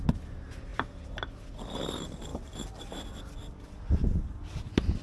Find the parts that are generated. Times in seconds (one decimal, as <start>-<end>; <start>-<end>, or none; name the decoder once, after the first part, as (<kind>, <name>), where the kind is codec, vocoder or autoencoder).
none